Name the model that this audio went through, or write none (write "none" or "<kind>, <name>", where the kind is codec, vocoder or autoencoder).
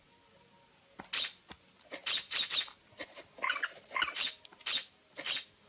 none